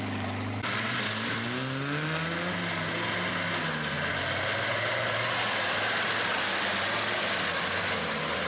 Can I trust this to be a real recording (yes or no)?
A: yes